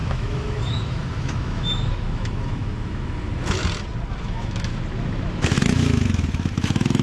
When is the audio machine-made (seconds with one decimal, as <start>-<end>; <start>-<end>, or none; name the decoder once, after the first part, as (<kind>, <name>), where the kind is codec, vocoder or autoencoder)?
0.0-3.6 (autoencoder, DAC-VAE); 4.2-4.7; 5.3-7.0